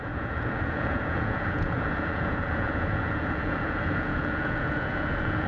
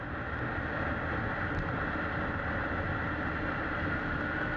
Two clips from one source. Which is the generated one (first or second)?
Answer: first